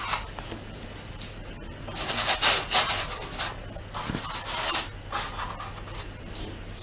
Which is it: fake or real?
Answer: real